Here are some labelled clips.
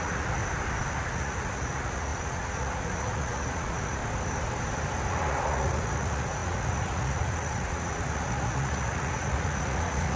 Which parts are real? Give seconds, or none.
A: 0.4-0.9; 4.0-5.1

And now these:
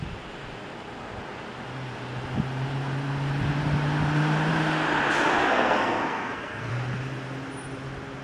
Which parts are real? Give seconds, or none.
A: 0.0-5.4; 6.7-8.2

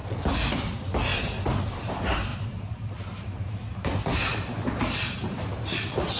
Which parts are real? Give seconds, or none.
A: 0.6-2.3